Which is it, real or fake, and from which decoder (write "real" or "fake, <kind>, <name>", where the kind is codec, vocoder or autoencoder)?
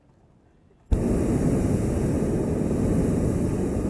real